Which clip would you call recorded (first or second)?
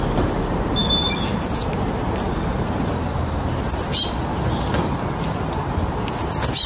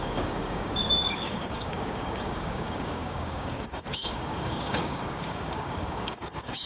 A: first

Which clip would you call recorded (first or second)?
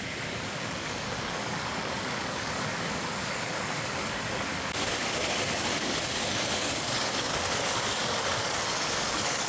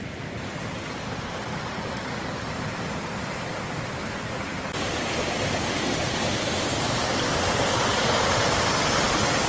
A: second